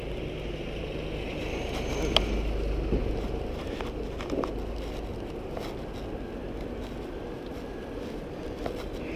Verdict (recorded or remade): recorded